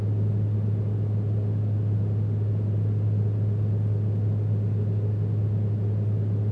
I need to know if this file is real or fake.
real